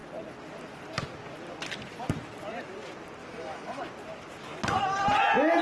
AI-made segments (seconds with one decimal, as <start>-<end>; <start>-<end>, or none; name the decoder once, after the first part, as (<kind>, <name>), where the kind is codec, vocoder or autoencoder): 3.2-3.8 (autoencoder, DAC-VAE)